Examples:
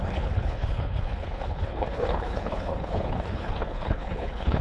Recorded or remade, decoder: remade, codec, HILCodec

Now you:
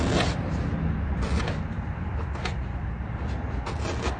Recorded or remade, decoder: recorded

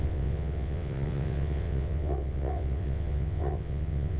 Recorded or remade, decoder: remade, vocoder, WaveNeXt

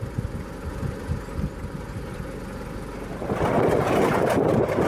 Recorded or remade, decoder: recorded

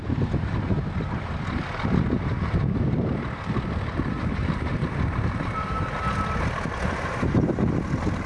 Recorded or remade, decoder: recorded